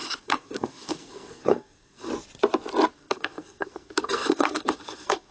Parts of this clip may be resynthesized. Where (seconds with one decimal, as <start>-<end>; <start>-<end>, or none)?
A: 0.0-2.1; 2.9-5.3